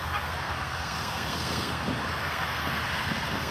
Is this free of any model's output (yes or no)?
no